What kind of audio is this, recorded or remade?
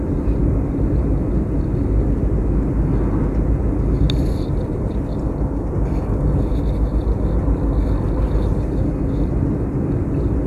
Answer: recorded